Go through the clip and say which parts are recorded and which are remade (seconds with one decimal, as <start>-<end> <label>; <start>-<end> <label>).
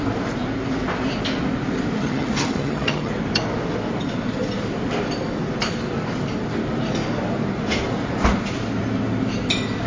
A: 0.0-2.0 recorded; 2.0-3.1 remade; 3.1-9.9 recorded